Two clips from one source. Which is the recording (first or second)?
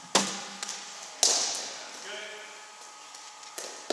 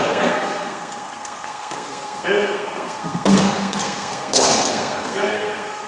first